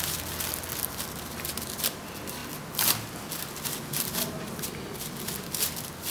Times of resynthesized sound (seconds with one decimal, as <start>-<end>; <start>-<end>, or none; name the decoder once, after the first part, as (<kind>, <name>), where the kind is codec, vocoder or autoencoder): none